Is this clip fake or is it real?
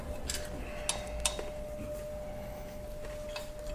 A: real